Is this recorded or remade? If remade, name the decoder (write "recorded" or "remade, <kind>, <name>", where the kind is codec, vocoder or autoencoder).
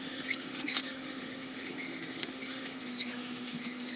remade, autoencoder, DAC-VAE